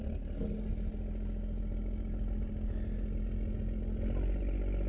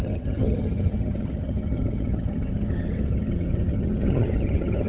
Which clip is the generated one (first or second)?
second